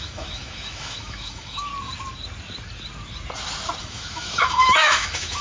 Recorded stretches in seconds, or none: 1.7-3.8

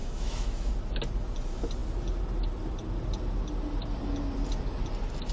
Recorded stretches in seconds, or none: 0.7-5.3

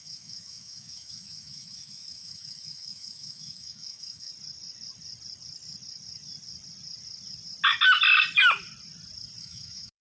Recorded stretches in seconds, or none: 4.3-9.4

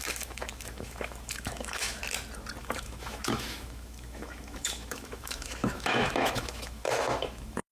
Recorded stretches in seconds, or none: 2.0-2.6

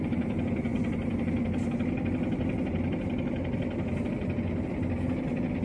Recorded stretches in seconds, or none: 0.0-5.6

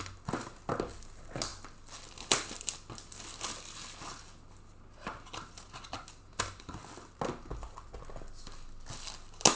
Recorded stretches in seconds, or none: 0.0-9.6

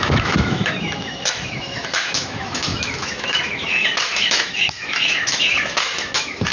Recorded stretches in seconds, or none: none

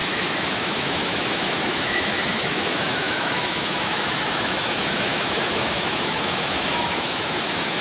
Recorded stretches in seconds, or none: none